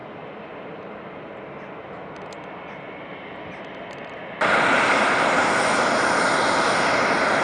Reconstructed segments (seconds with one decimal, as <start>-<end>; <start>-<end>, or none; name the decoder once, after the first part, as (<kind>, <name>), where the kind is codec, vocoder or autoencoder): none